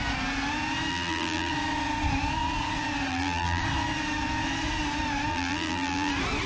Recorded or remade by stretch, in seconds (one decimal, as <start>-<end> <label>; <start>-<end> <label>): 0.0-0.9 recorded; 0.9-1.5 remade; 1.5-3.1 recorded; 3.1-3.6 remade; 3.6-5.3 recorded; 5.3-6.1 remade; 6.1-6.5 recorded